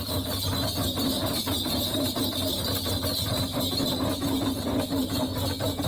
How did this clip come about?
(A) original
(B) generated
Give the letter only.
A